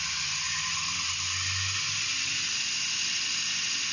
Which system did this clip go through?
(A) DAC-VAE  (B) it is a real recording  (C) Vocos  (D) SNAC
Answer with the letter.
B